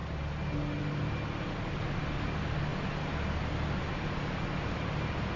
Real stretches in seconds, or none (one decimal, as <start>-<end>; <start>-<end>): 0.0-5.4